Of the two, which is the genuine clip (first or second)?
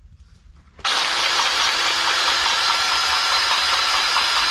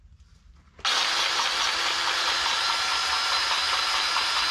second